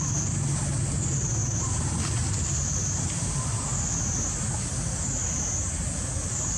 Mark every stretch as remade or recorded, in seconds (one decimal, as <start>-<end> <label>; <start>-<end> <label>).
0.0-6.6 recorded